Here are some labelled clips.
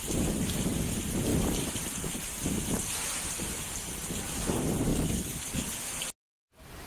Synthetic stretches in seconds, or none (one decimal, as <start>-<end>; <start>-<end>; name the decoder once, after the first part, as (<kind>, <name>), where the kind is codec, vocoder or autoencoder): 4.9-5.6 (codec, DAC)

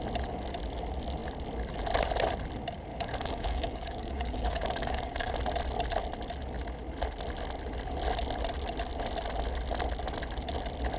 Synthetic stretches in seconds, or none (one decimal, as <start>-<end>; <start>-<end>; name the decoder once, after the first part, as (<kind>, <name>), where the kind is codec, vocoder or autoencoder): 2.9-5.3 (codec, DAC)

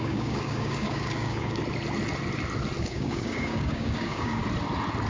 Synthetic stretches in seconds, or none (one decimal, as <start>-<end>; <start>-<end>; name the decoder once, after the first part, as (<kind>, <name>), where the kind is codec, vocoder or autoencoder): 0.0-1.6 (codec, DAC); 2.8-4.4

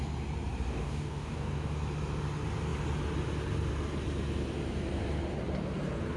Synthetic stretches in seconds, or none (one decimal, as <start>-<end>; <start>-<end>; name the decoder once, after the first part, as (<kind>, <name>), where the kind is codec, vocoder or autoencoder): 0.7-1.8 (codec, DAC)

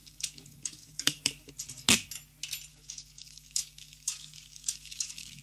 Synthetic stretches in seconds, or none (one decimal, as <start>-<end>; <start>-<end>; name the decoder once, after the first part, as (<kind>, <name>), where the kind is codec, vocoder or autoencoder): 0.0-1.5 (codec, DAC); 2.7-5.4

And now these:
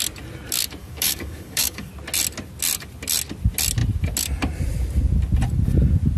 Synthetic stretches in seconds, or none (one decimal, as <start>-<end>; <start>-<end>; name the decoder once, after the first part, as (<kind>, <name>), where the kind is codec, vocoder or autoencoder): 0.8-1.9 (codec, DAC)

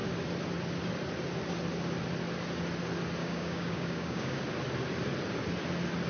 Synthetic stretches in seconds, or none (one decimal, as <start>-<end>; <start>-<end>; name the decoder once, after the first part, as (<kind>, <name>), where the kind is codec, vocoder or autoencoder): 3.2-4.4 (codec, DAC)

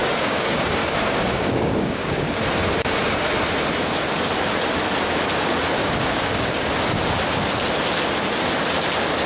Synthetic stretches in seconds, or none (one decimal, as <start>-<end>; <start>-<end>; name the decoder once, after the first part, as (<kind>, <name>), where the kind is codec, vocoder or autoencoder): 0.0-2.4 (codec, DAC); 5.8-6.7